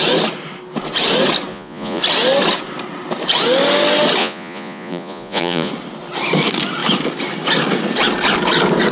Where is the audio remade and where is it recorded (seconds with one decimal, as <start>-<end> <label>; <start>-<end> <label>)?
0.0-1.5 recorded; 1.5-2.0 remade; 2.0-4.2 recorded; 4.2-5.7 remade; 5.7-8.9 recorded